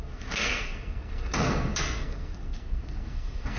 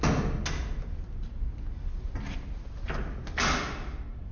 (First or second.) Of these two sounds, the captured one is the second